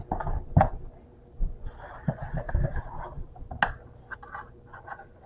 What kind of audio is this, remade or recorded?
recorded